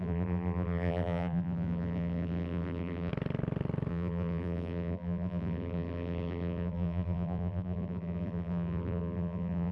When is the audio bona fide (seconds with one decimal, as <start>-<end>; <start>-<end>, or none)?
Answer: 3.1-3.9